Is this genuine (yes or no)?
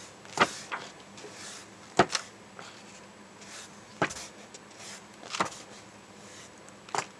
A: yes